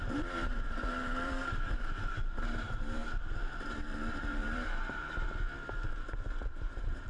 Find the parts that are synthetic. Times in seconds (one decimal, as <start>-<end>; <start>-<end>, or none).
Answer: 0.0-3.0; 3.8-5.0; 6.4-7.1